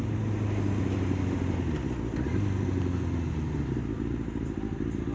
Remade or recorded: recorded